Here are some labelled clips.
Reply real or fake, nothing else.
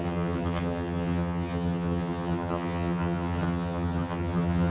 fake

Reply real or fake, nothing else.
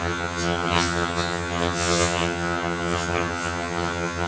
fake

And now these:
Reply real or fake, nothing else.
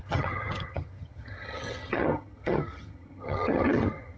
fake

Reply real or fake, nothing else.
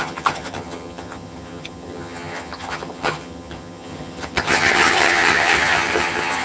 fake